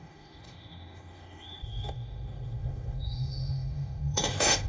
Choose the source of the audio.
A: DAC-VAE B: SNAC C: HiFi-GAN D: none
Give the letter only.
A